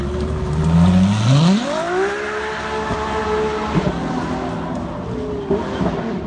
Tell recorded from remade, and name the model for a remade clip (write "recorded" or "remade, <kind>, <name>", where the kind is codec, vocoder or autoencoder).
recorded